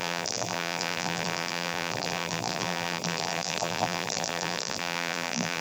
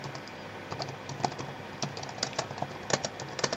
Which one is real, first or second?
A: second